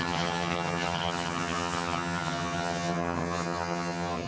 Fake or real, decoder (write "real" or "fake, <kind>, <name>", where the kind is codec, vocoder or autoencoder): fake, vocoder, HiFi-GAN